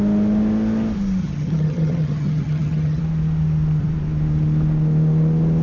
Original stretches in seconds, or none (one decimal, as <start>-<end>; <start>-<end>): 0.0-1.2; 3.0-5.6